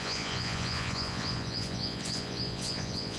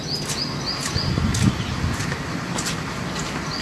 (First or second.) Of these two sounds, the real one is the second